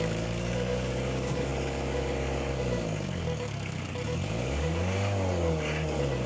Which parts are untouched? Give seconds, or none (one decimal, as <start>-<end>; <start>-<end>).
none